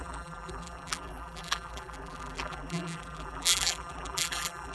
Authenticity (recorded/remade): remade